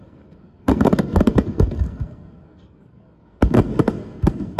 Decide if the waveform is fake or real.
fake